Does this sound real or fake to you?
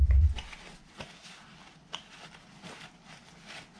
real